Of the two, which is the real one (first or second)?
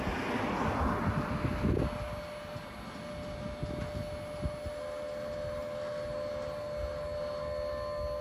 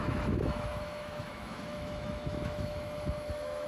first